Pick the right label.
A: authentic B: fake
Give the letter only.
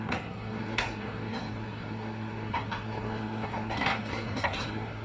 B